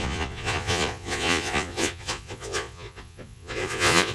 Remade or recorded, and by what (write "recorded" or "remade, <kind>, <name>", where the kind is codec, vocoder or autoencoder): remade, vocoder, Vocos